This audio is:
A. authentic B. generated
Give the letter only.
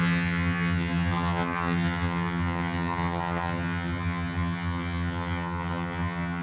B